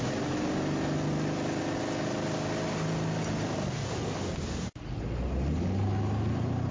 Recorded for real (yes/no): yes